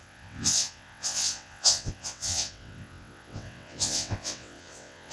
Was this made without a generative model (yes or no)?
no